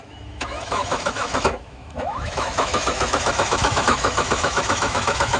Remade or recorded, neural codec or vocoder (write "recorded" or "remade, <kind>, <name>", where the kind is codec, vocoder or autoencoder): remade, autoencoder, DAC-VAE